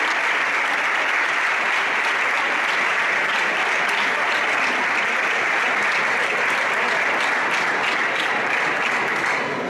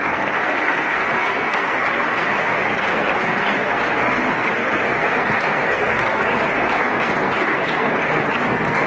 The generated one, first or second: second